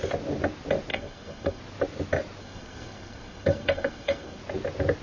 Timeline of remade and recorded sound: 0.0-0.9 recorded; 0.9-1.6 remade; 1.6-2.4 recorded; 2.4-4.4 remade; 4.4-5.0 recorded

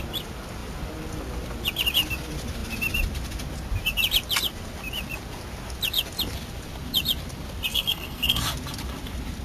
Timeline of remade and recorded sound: 0.0-7.7 recorded; 7.7-8.4 remade; 8.4-9.4 recorded